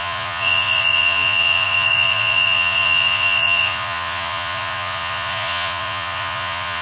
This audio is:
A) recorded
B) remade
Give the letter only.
B